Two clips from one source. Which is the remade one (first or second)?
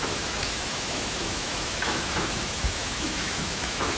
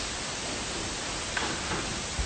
first